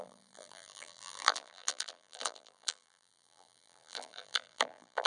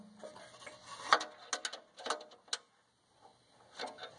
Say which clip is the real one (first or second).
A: second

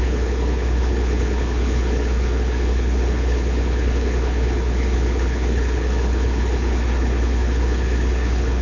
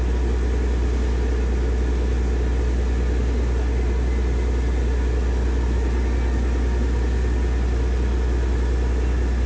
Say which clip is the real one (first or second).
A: second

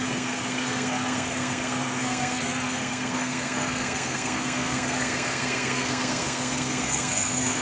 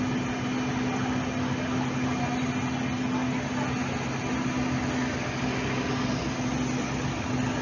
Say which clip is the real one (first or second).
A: second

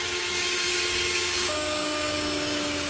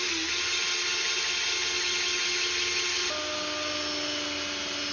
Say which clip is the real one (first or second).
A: second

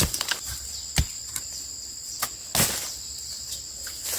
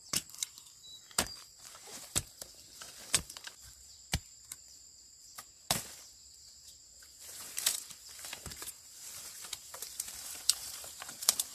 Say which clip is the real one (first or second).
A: first